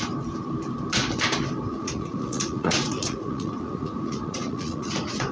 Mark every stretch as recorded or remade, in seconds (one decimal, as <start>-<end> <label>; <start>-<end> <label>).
0.0-1.7 recorded; 1.7-5.3 remade